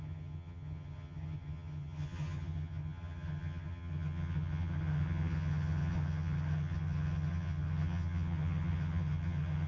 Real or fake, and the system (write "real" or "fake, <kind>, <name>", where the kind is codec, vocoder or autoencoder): fake, vocoder, HiFi-GAN